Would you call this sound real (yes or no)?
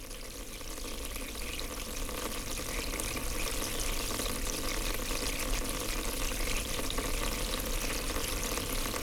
yes